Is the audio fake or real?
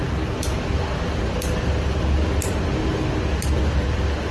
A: real